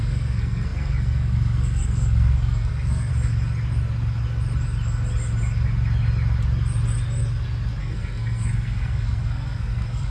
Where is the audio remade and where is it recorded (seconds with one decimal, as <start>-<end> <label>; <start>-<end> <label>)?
0.0-3.1 remade; 3.1-7.8 recorded; 7.8-10.1 remade

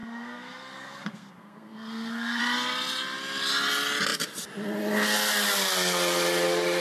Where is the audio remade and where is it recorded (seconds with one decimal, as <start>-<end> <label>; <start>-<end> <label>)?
0.0-2.4 remade; 2.4-6.8 recorded

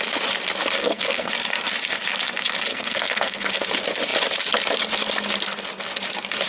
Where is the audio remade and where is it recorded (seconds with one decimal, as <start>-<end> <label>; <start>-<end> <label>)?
0.0-0.8 recorded; 0.8-1.3 remade; 1.3-2.7 recorded; 2.7-3.5 remade; 3.5-6.5 recorded

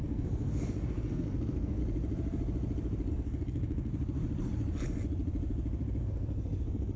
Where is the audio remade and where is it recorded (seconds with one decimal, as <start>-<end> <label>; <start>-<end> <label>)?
0.0-1.8 remade; 1.8-3.1 recorded; 3.1-3.9 remade; 3.9-6.0 recorded; 6.0-7.0 remade

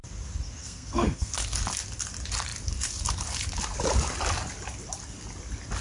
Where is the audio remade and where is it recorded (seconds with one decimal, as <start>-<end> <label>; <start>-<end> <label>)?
0.0-0.6 recorded; 0.6-1.3 remade; 1.3-5.8 recorded

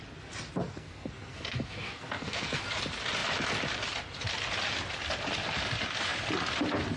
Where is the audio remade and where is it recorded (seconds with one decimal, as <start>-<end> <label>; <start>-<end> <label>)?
0.0-0.6 recorded; 0.6-2.6 remade; 2.6-7.0 recorded

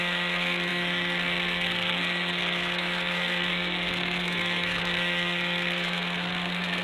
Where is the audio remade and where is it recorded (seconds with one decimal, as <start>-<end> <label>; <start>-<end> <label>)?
0.0-6.8 remade

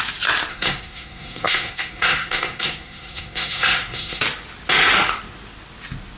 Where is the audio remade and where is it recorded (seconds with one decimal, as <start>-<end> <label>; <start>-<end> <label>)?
0.0-0.5 recorded; 0.5-4.2 remade; 4.2-6.2 recorded